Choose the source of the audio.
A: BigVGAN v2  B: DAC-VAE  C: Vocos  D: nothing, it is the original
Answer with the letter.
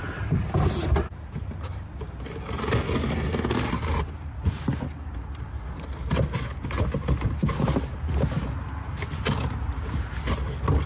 D